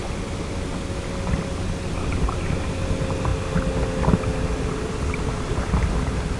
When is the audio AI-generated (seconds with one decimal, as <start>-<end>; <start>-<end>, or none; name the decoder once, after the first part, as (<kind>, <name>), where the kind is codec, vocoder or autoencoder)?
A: none